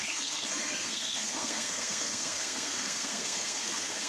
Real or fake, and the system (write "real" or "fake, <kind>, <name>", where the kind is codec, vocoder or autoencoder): fake, codec, SNAC